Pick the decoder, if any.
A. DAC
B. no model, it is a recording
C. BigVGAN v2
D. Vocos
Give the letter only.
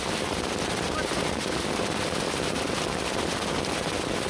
C